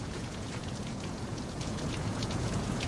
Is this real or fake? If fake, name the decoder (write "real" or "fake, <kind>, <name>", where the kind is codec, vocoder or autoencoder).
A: fake, vocoder, Vocos